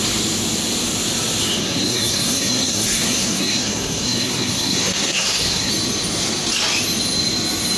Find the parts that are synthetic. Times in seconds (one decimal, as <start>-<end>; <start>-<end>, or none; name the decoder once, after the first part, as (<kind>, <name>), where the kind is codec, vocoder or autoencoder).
1.4-5.7 (codec, SNAC)